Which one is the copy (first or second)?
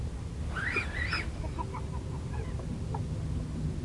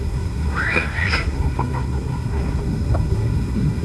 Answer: second